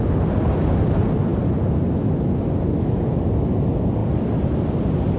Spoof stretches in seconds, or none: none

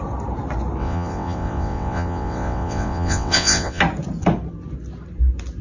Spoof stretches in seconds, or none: 0.8-3.8 (vocoder, WaveNeXt)

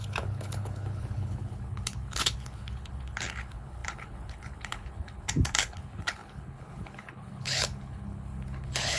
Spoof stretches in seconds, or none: 0.0-9.0 (codec, HILCodec)

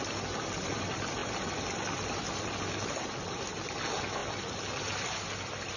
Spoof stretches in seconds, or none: none

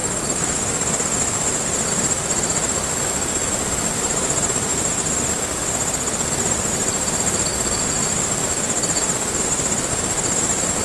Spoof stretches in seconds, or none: 3.5-4.7 (vocoder, BigVGAN v2); 6.7-7.5; 9.4-10.8

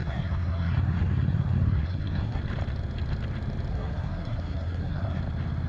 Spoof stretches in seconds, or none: 0.0-2.4 (codec, SNAC); 3.7-5.2

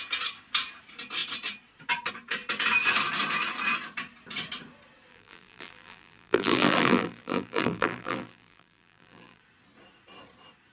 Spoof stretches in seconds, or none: 5.1-9.4 (vocoder, BigVGAN v2)